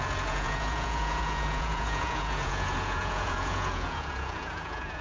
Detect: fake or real fake